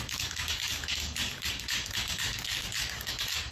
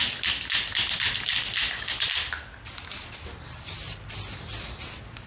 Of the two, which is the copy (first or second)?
first